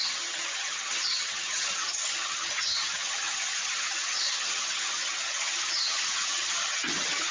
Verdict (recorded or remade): remade